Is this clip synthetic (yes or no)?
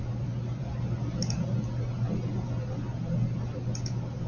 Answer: no